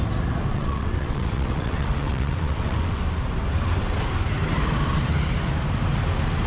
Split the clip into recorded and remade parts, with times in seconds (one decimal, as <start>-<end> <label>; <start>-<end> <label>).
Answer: 0.0-0.5 recorded; 0.5-3.0 remade; 3.0-6.5 recorded

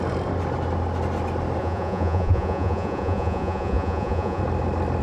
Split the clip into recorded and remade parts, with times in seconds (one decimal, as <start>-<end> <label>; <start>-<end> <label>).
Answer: 0.0-1.6 recorded; 1.6-4.4 remade; 4.4-5.0 recorded

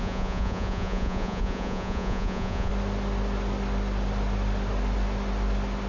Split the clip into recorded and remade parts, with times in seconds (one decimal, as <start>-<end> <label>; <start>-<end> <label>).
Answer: 0.0-2.7 remade; 2.7-5.9 recorded

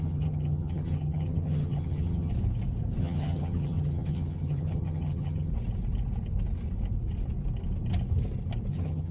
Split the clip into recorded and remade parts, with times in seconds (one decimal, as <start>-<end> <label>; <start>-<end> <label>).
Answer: 0.0-2.3 remade; 2.3-3.0 recorded; 3.0-5.5 remade; 5.5-8.7 recorded; 8.7-9.1 remade

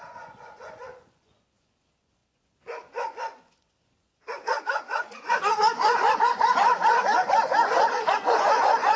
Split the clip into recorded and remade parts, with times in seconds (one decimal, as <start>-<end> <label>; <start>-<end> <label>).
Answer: 0.0-9.0 remade